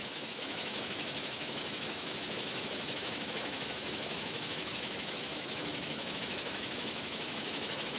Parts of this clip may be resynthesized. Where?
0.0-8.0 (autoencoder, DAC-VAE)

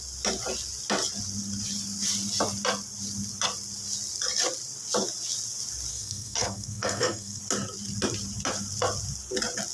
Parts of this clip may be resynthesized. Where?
5.9-7.4 (codec, SNAC)

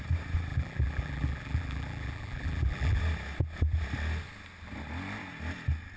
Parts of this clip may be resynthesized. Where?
0.5-3.0 (vocoder, BigVGAN v2)